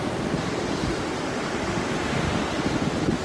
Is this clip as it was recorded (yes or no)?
yes